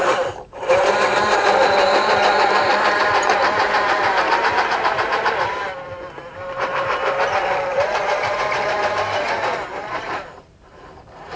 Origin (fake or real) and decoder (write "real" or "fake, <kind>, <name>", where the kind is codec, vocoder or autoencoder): fake, vocoder, BigVGAN v2